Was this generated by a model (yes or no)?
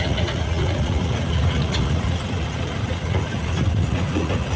yes